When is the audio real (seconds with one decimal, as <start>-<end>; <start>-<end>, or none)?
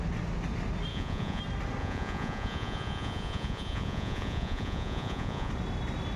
0.0-0.9; 1.4-1.8; 5.5-6.2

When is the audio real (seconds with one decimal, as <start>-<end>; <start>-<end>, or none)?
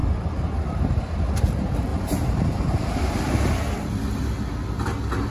0.0-1.9; 3.9-5.3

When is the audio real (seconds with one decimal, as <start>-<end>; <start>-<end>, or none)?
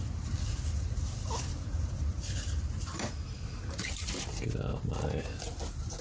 4.7-6.0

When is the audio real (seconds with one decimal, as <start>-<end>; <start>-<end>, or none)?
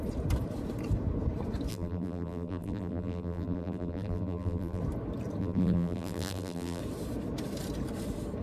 0.0-1.7; 4.8-5.4; 6.8-8.4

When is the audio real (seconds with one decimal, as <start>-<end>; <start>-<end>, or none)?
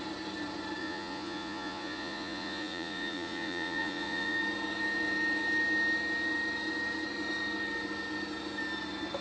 0.0-0.8; 4.4-9.2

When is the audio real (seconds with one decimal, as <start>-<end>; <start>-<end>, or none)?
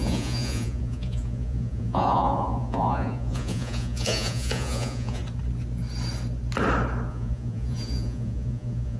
5.2-7.1